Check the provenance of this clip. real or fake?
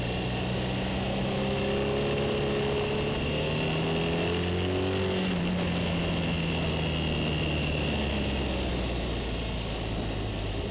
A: real